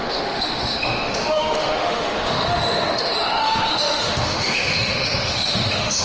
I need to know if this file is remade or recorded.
remade